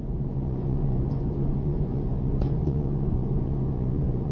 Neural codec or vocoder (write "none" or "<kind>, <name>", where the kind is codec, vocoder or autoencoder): vocoder, Vocos